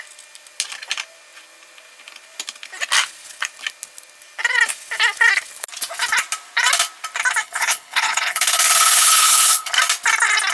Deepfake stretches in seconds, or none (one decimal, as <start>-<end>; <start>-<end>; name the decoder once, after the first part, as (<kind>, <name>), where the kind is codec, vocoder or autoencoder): 7.4-9.7 (codec, HILCodec)